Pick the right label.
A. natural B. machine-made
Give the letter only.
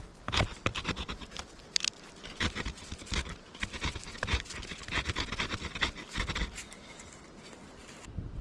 A